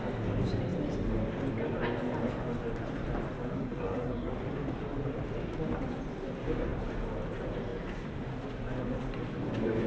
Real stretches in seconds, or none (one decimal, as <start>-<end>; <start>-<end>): 0.0-3.6; 4.3-9.9